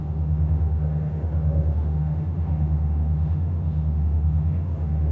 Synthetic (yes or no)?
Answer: yes